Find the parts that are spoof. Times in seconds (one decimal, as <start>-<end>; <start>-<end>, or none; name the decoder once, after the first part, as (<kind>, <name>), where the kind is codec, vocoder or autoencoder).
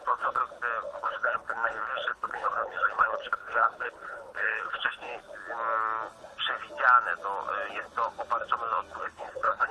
0.0-0.4 (codec, HILCodec); 1.0-5.1; 9.0-9.7